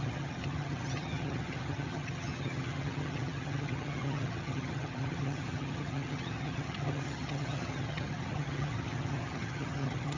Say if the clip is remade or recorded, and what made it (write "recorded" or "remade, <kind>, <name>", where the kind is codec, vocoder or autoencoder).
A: remade, vocoder, HiFi-GAN